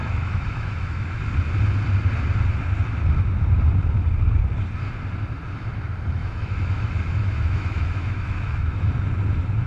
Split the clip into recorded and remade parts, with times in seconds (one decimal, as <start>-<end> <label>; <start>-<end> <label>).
0.0-1.2 remade; 1.2-6.2 recorded; 6.2-8.9 remade; 8.9-9.7 recorded